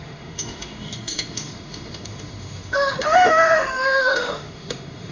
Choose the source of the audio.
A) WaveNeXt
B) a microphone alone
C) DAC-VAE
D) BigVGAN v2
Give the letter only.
C